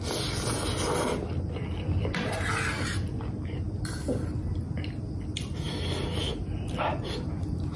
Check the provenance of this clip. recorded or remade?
recorded